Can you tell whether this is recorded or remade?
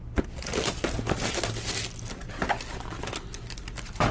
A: recorded